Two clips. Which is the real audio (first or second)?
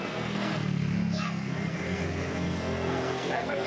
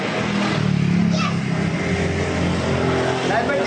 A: second